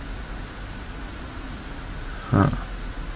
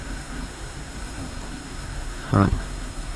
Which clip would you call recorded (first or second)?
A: first